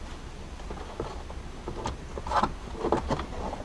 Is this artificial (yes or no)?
no